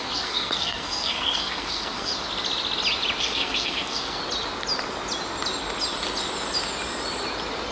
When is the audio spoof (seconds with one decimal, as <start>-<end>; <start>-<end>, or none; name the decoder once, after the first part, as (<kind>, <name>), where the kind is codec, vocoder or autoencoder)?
0.0-2.1 (codec, SNAC); 3.2-4.2